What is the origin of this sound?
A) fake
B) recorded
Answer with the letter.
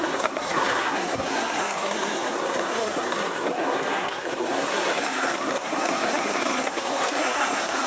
A